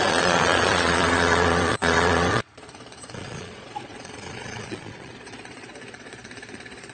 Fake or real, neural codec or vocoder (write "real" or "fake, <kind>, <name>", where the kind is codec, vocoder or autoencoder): fake, vocoder, Vocos